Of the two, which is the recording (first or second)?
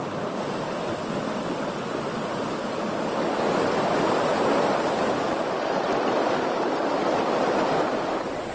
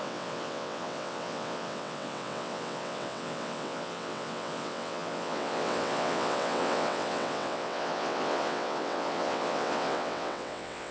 first